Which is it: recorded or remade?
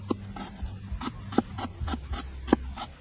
recorded